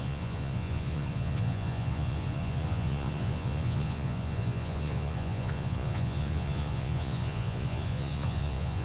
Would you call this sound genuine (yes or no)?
no